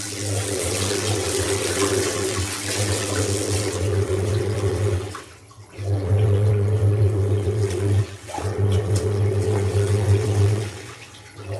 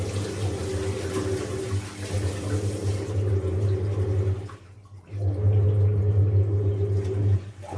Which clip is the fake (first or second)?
first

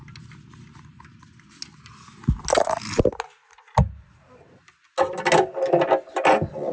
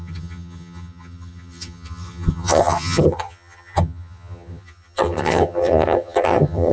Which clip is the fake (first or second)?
second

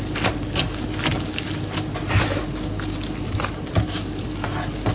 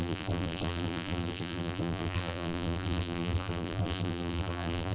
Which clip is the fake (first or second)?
second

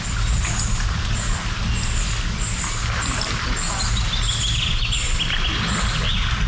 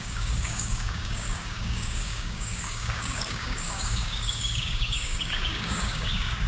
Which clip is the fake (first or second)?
second